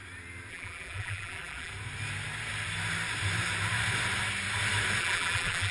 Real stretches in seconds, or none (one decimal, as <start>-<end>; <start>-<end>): 0.0-0.5; 1.7-5.0